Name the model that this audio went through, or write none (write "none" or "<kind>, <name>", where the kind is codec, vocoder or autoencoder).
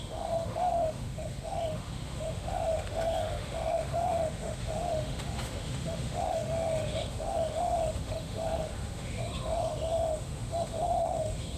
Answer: autoencoder, DAC-VAE